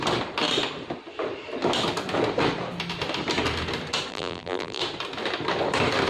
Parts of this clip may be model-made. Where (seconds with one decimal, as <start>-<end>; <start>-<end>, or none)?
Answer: 4.1-4.8